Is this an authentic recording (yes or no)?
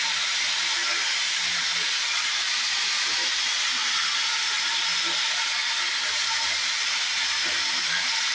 yes